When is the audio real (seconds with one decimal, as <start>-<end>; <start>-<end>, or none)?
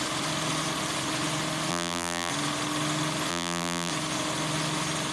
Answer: 0.0-1.7; 2.3-3.3; 3.9-5.1